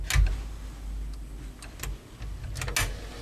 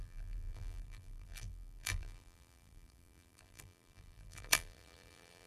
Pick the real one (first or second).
first